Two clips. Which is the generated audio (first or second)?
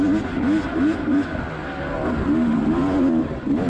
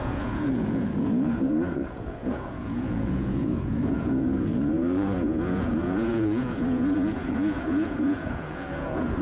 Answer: second